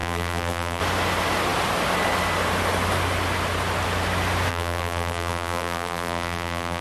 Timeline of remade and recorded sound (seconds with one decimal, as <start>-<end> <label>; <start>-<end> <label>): 0.0-0.8 remade; 0.8-4.5 recorded; 4.5-6.8 remade